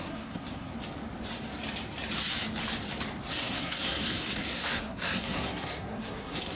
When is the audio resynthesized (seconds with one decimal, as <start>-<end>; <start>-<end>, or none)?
0.0-0.7; 3.3-6.6